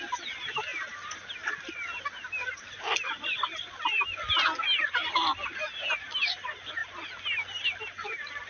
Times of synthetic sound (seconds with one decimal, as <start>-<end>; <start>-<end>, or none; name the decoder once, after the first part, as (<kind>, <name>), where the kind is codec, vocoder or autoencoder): none

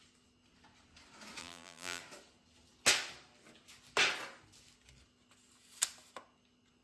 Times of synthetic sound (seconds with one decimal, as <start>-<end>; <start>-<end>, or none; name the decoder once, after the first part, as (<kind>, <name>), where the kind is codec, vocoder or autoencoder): 1.4-2.0 (vocoder, BigVGAN v2)

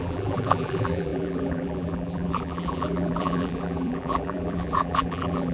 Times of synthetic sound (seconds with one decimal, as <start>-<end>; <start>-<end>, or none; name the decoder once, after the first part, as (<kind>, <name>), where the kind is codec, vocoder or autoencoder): 0.0-5.5 (vocoder, BigVGAN v2)

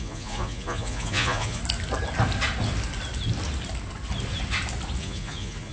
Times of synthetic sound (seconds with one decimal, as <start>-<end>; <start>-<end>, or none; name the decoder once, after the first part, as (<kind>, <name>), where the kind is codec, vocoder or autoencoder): 0.0-1.6 (vocoder, Vocos); 5.0-5.7

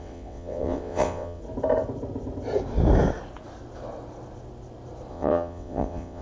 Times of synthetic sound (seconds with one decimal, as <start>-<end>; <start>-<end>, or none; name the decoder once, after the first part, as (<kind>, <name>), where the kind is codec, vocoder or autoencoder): 0.0-1.4 (vocoder, WaveNeXt); 5.1-6.2

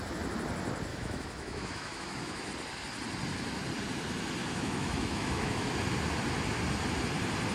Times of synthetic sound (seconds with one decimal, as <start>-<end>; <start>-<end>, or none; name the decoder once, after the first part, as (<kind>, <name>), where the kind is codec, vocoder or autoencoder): 0.9-2.5 (autoencoder, DAC-VAE); 4.4-5.7

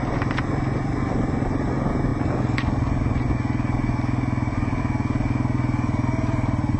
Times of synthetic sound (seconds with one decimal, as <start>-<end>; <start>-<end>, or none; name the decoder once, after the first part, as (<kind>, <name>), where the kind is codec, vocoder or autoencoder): none

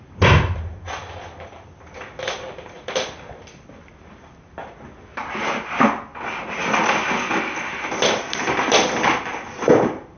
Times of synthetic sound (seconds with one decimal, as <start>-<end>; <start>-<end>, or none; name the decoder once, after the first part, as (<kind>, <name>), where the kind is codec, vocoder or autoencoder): none